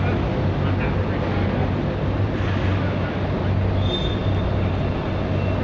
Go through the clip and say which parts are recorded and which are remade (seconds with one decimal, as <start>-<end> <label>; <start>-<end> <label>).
0.0-5.6 recorded